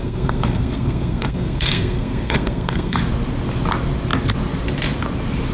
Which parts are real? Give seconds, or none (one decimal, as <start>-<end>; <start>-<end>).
3.0-5.5